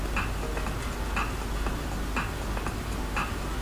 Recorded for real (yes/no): yes